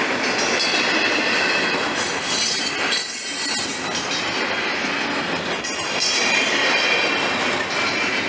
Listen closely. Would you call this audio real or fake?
real